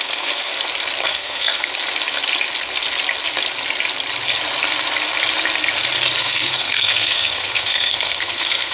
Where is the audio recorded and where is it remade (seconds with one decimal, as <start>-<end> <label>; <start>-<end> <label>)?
0.0-0.5 remade; 0.5-1.0 recorded; 1.0-1.7 remade; 1.7-6.2 recorded; 6.2-8.7 remade